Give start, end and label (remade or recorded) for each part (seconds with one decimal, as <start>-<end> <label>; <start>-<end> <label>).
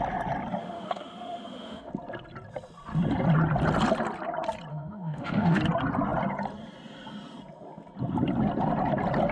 0.0-0.6 recorded; 0.6-1.9 remade; 1.9-4.7 recorded; 4.7-5.6 remade; 5.6-9.3 recorded